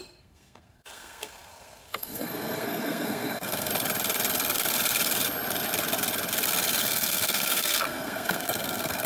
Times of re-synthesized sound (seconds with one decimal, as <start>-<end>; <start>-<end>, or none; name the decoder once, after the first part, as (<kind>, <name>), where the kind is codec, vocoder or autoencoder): 0.0-3.7 (codec, SNAC); 6.8-9.1